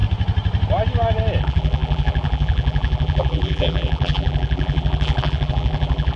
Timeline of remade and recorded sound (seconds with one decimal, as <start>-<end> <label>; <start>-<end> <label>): 0.0-1.4 recorded; 1.4-6.2 remade